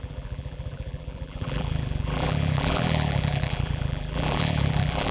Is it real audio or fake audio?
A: fake